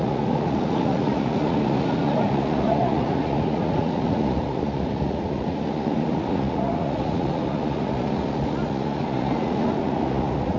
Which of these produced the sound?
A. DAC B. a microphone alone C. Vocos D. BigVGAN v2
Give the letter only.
C